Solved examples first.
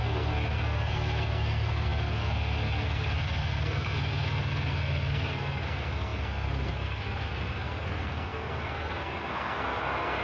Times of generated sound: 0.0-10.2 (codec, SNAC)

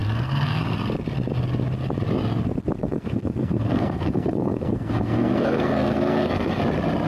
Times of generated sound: 0.0-0.6 (codec, SNAC); 2.8-6.6

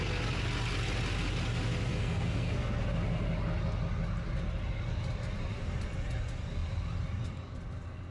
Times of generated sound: 1.9-2.8 (codec, SNAC)

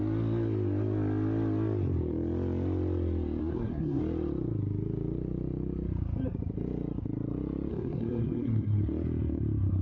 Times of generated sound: 3.4-4.0 (codec, SNAC); 7.7-8.8

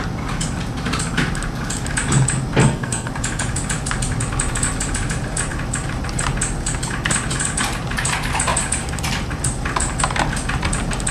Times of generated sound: 2.6-3.1 (codec, SNAC)

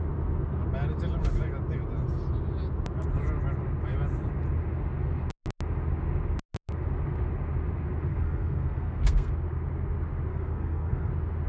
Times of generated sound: 8.1-9.3 (codec, SNAC); 10.3-11.1

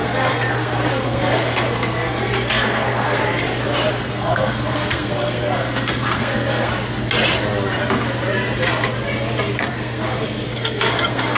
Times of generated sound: 0.0-3.2 (codec, SNAC); 3.9-6.7; 9.7-11.4